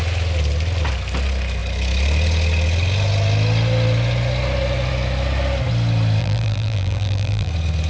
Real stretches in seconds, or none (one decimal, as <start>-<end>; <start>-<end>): 0.0-6.2; 7.5-7.9